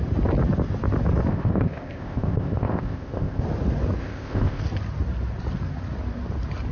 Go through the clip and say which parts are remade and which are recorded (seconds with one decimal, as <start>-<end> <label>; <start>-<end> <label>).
0.0-1.3 recorded; 1.3-3.4 remade; 3.4-4.0 recorded; 4.0-4.6 remade; 4.6-6.7 recorded